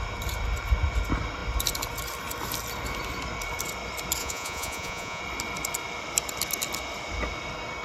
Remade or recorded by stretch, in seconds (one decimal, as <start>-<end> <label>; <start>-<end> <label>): 0.0-4.2 recorded; 4.2-5.2 remade; 5.2-7.8 recorded